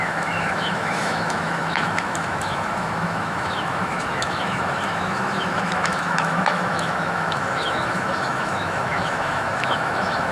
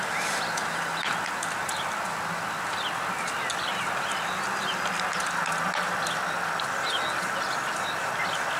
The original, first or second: second